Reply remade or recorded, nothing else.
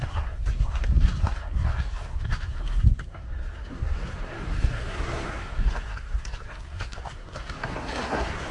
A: remade